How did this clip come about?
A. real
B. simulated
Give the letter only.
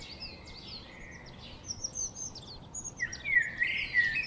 A